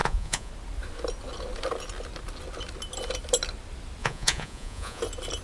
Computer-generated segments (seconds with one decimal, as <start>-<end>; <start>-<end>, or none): 0.0-0.5; 4.0-5.0